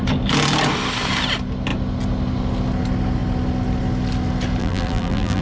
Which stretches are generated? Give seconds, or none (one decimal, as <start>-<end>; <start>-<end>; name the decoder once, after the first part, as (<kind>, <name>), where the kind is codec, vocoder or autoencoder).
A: 4.6-5.4 (vocoder, BigVGAN v2)